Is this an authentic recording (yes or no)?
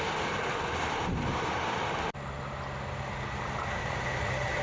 yes